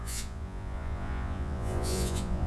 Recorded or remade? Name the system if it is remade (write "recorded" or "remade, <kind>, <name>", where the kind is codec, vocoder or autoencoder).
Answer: remade, vocoder, Vocos